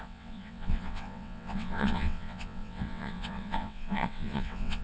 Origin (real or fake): fake